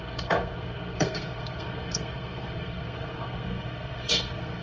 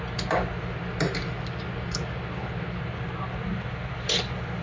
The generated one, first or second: first